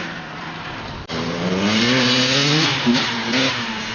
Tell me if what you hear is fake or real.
fake